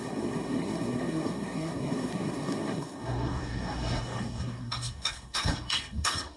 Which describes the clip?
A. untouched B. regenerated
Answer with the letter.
B